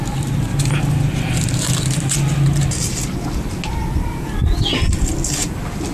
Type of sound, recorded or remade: recorded